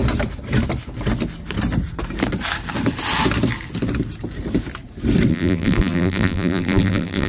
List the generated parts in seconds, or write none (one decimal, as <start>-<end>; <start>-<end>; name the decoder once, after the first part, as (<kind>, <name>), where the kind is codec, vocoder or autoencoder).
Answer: 5.3-7.3 (vocoder, BigVGAN v2)